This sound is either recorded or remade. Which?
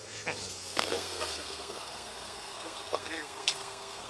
remade